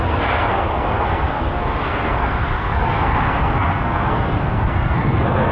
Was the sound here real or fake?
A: fake